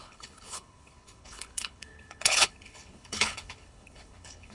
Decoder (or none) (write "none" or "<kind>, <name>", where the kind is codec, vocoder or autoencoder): codec, HILCodec